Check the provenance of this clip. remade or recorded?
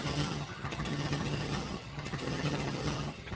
remade